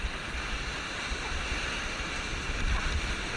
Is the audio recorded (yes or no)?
yes